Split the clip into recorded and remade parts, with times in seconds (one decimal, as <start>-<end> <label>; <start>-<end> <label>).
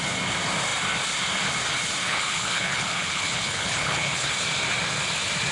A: 0.0-2.0 recorded; 2.0-4.3 remade; 4.3-5.5 recorded